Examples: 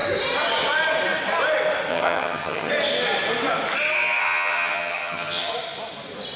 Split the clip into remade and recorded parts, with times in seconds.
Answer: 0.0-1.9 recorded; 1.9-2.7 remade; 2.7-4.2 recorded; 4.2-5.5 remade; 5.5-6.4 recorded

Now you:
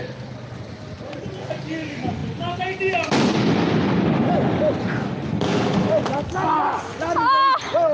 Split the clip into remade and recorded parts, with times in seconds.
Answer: 0.0-7.9 recorded

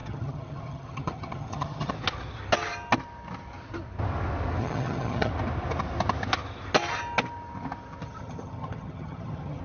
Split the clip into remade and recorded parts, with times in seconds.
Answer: 0.0-1.9 remade; 1.9-4.6 recorded; 4.6-5.3 remade; 5.3-8.0 recorded; 8.0-9.6 remade

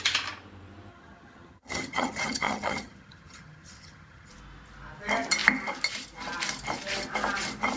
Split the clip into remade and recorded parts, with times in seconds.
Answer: 0.0-0.9 recorded; 0.9-4.3 remade; 4.3-7.8 recorded